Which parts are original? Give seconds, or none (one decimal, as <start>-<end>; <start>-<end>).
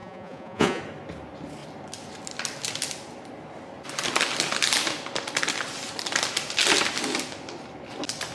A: 0.8-8.3